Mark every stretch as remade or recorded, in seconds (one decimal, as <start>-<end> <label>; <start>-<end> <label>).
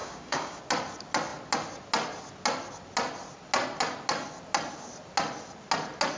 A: 0.0-0.6 remade; 0.6-6.2 recorded